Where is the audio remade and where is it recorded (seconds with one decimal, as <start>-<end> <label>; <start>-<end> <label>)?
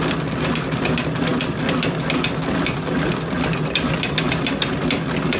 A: 0.0-5.4 recorded